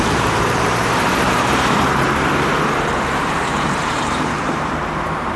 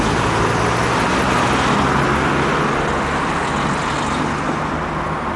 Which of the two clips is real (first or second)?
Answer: second